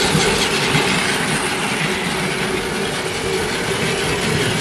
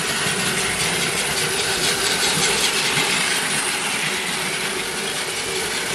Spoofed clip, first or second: second